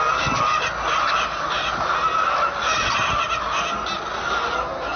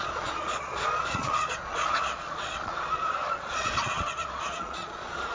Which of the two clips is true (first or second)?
first